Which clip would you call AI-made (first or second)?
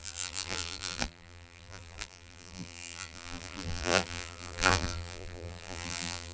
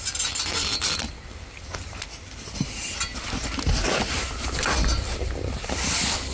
first